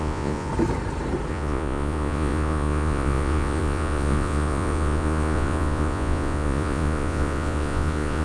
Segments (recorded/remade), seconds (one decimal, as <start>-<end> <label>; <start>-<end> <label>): 0.0-0.5 remade; 0.5-1.3 recorded; 1.3-8.2 remade